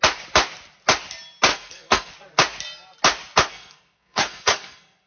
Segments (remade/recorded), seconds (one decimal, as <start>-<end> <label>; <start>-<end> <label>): 0.0-1.5 recorded; 1.5-2.1 remade; 2.1-3.5 recorded; 3.5-5.1 remade